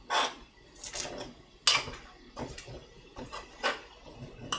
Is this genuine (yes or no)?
yes